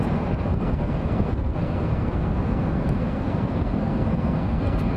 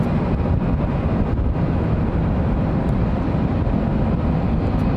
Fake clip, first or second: first